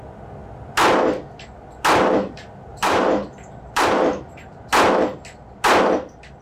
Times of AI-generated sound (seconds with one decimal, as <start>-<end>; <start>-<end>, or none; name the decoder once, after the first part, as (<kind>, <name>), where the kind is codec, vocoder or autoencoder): 2.7-4.7 (vocoder, BigVGAN v2)